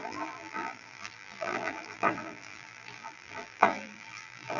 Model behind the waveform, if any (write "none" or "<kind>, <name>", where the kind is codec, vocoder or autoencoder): vocoder, BigVGAN v2